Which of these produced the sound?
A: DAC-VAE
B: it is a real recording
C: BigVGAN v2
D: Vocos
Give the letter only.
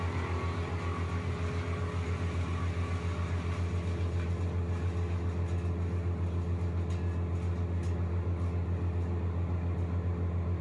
B